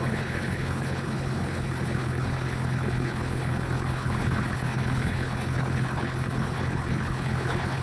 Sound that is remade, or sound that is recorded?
remade